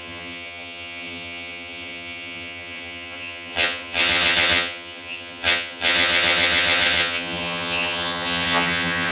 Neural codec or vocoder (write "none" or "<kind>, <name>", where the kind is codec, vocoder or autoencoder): vocoder, HiFi-GAN